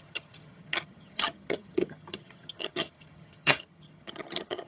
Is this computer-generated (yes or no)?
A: yes